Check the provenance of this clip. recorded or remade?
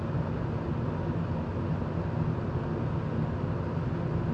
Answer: recorded